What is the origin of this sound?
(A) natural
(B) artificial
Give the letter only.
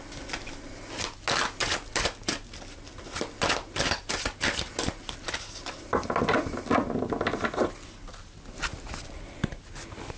A